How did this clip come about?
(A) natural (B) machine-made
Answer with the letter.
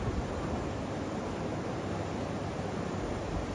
A